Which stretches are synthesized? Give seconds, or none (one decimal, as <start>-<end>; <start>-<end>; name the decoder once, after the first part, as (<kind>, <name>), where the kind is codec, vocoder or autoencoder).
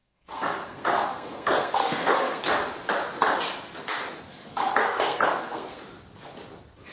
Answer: 0.0-2.4 (codec, SNAC); 4.3-5.8